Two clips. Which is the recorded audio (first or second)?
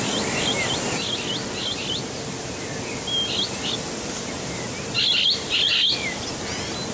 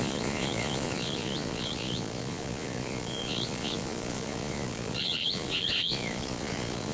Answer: first